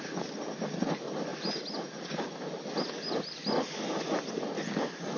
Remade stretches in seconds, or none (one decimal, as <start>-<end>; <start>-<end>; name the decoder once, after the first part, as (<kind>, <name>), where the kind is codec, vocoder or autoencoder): none